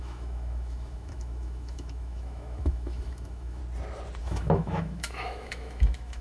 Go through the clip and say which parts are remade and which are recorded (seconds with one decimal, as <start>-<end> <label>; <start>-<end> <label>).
0.0-3.6 remade; 3.6-4.2 recorded; 4.2-6.2 remade